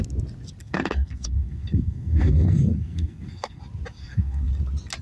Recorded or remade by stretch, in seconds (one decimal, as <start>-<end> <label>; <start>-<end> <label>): 0.0-0.6 recorded; 0.6-3.6 remade; 3.6-4.0 recorded; 4.0-4.5 remade; 4.5-5.0 recorded